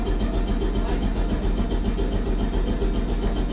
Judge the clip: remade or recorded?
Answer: recorded